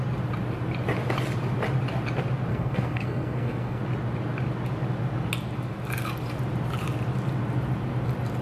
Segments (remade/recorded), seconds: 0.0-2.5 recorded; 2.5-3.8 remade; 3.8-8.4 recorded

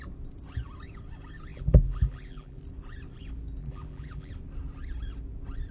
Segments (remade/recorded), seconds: 0.0-1.5 recorded; 1.5-2.6 remade; 2.6-3.6 recorded; 3.6-4.3 remade; 4.3-5.7 recorded

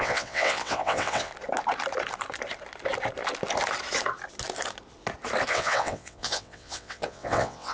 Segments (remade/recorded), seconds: 0.0-1.3 remade; 1.3-5.5 recorded; 5.5-7.7 remade

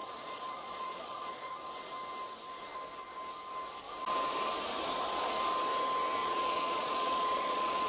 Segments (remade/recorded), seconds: 0.0-1.5 remade; 1.5-6.2 recorded; 6.2-7.9 remade

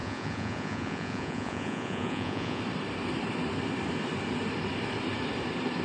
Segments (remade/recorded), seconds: 0.0-2.6 remade; 2.6-5.8 recorded

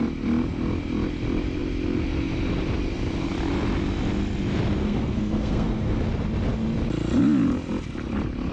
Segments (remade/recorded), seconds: 0.0-4.8 recorded; 4.8-6.0 remade; 6.0-8.5 recorded

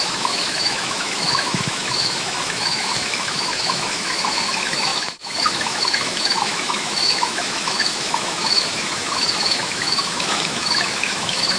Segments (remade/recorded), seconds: 0.0-11.6 remade

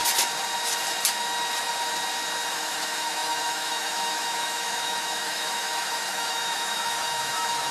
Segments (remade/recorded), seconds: 0.0-2.5 recorded; 2.5-7.7 remade